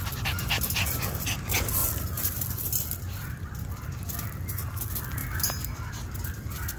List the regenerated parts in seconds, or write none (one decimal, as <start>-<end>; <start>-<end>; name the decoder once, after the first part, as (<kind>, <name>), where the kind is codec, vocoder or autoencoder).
1.8-4.0 (vocoder, BigVGAN v2); 5.2-5.9